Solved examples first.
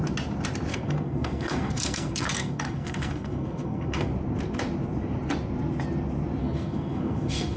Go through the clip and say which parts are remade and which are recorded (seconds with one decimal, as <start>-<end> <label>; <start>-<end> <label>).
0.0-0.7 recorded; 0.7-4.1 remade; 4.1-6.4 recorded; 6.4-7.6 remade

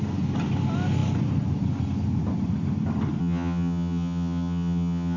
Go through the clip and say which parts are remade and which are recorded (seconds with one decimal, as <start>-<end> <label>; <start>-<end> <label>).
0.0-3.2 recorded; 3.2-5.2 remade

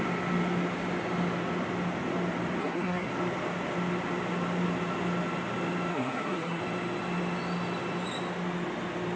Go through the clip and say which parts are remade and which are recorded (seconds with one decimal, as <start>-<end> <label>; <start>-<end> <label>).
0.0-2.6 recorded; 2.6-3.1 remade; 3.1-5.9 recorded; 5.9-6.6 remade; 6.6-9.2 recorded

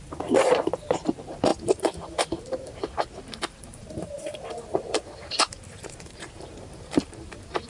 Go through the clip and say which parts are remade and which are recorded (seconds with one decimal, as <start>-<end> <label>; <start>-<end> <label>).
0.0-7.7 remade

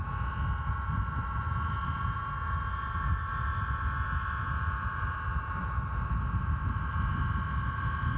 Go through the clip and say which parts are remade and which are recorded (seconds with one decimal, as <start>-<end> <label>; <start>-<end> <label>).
0.0-8.2 recorded

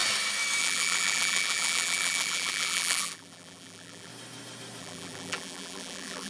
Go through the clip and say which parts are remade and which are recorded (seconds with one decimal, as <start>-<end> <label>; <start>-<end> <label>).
0.0-0.6 recorded; 0.6-4.1 remade; 4.1-4.8 recorded; 4.8-6.3 remade

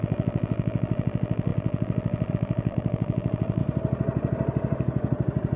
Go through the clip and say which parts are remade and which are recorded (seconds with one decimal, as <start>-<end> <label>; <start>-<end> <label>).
0.0-3.6 remade; 3.6-5.6 recorded

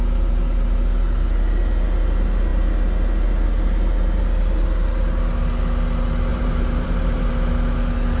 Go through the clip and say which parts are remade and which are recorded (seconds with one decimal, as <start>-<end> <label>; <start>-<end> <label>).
0.0-6.3 recorded; 6.3-7.3 remade; 7.3-8.2 recorded